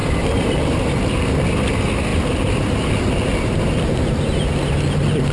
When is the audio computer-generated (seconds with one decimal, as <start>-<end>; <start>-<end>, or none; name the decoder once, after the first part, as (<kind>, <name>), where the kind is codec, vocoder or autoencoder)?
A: 0.0-0.8 (vocoder, BigVGAN v2); 2.1-2.9; 3.3-4.3